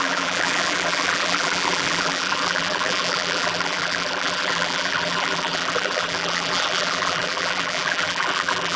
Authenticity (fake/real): fake